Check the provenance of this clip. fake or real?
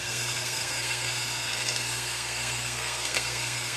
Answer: fake